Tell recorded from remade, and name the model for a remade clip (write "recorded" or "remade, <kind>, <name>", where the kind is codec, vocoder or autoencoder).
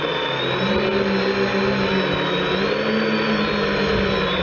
recorded